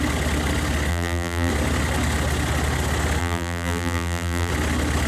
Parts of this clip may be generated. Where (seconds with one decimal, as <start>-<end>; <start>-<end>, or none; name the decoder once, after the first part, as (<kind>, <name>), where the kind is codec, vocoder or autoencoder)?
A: 0.9-1.5 (vocoder, BigVGAN v2); 3.2-4.5